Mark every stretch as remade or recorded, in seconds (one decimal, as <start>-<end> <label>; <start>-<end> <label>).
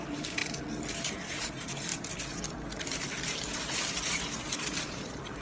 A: 0.0-0.4 remade; 0.4-1.3 recorded; 1.3-1.9 remade; 1.9-3.9 recorded; 3.9-5.4 remade